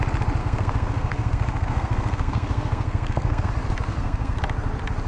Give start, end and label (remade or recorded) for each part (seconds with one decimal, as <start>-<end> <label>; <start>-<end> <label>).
0.0-0.4 recorded; 0.4-3.5 remade; 3.5-3.9 recorded; 3.9-4.4 remade; 4.4-5.1 recorded

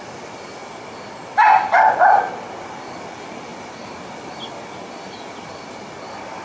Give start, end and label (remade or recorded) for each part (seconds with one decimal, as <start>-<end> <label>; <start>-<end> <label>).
0.0-6.4 recorded

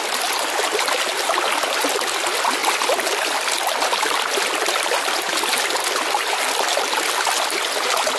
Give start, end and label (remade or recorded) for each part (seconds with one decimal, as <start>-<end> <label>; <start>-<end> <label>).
0.0-8.2 recorded

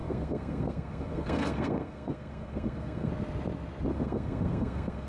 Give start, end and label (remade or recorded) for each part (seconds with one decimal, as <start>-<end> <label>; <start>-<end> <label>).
0.0-3.1 remade; 3.1-3.9 recorded; 3.9-5.1 remade